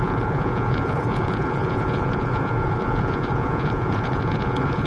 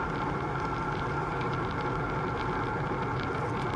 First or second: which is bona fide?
second